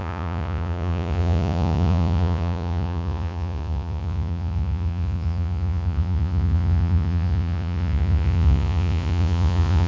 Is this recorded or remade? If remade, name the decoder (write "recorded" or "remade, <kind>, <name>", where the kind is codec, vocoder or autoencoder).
remade, vocoder, Vocos